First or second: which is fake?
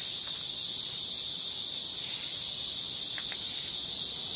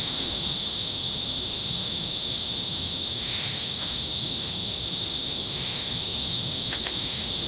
second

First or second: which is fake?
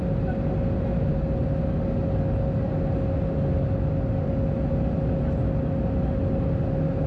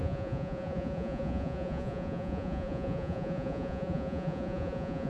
second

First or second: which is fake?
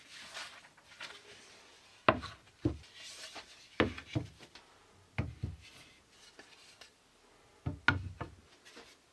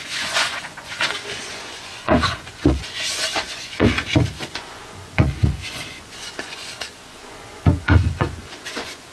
second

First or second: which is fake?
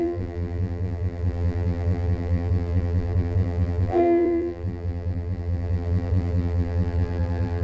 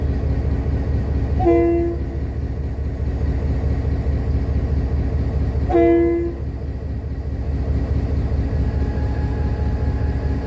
first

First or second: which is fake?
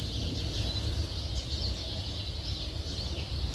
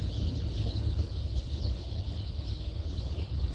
second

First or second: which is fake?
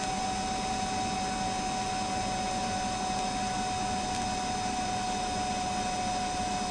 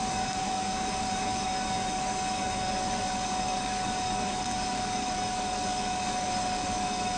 second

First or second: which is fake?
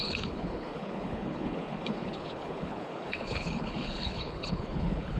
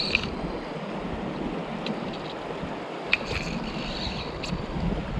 first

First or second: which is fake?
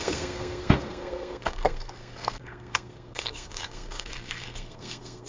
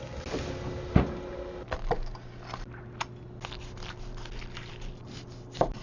first